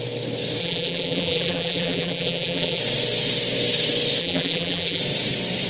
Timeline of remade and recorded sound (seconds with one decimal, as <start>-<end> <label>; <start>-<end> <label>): 0.0-0.6 recorded; 0.6-2.8 remade; 2.8-4.2 recorded; 4.2-5.0 remade; 5.0-5.7 recorded